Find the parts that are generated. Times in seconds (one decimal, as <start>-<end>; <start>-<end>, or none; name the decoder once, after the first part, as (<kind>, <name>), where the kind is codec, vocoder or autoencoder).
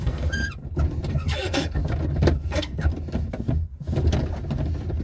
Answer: 0.0-0.4 (codec, SNAC); 1.1-1.8; 2.4-2.9